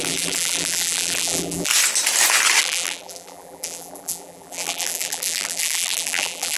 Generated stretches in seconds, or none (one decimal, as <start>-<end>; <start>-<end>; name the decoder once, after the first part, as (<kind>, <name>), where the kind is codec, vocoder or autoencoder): 0.0-1.7 (vocoder, BigVGAN v2); 2.6-6.6